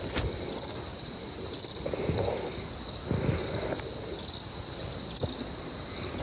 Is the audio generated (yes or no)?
no